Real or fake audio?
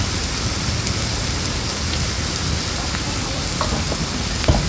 real